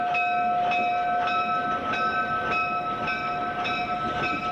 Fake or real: real